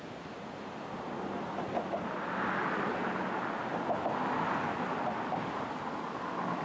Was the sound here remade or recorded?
recorded